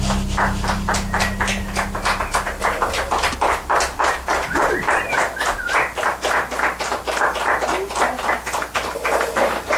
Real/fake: real